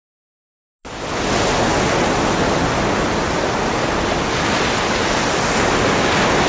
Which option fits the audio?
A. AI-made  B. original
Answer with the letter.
B